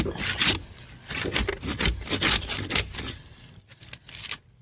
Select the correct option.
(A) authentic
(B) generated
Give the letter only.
A